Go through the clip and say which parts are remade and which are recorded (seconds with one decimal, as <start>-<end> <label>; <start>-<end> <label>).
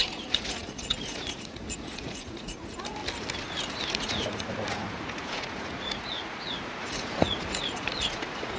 0.0-3.0 remade; 3.0-3.9 recorded; 3.9-8.6 remade